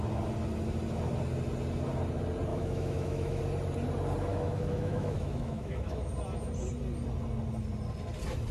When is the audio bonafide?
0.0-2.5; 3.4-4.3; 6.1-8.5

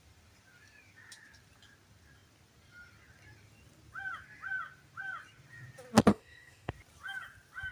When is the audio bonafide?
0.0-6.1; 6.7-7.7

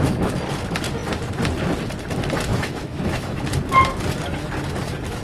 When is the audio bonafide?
0.0-2.5; 3.4-5.2

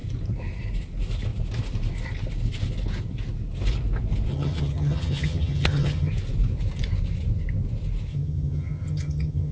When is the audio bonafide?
0.0-4.3; 6.1-8.1